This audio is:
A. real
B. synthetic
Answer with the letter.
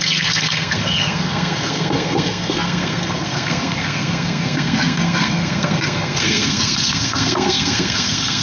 B